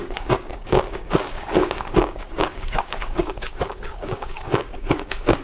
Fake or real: fake